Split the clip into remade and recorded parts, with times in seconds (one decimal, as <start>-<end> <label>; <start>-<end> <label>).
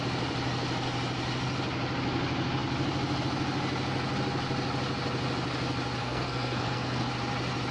0.0-6.0 recorded; 6.0-7.1 remade; 7.1-7.7 recorded